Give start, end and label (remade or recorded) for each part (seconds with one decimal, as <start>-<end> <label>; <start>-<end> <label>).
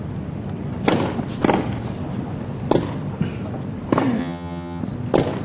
0.0-4.2 recorded; 4.2-4.8 remade; 4.8-5.4 recorded